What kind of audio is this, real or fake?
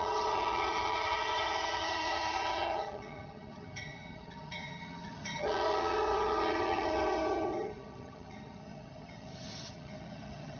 fake